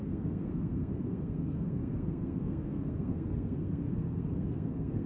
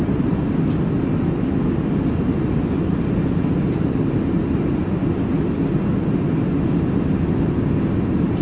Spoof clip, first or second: first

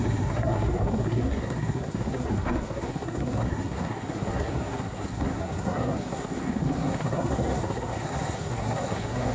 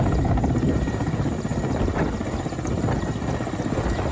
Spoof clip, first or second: first